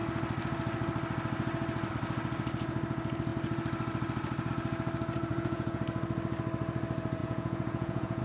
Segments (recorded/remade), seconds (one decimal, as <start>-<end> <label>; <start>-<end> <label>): 0.0-5.3 recorded; 5.3-5.8 remade; 5.8-7.2 recorded; 7.2-8.2 remade

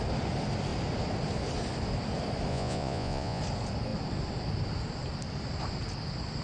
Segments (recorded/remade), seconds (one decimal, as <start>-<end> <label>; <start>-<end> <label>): 0.0-2.5 recorded; 2.5-3.4 remade; 3.4-6.4 recorded